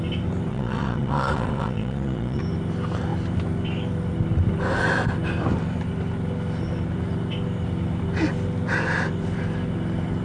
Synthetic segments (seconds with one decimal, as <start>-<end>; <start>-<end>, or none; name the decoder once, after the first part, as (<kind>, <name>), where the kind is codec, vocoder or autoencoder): 0.5-2.4 (vocoder, Vocos)